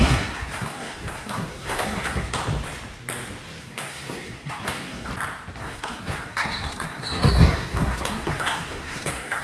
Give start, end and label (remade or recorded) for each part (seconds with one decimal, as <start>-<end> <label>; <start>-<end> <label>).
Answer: 0.0-2.4 remade; 2.4-3.6 recorded; 3.6-5.1 remade; 5.1-5.6 recorded; 5.6-9.4 remade